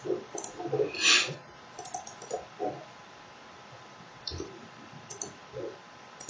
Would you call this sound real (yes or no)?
no